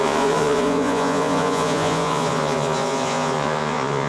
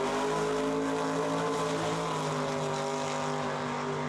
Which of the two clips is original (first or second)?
second